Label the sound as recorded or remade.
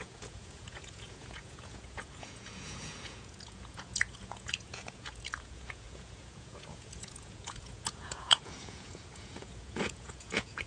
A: remade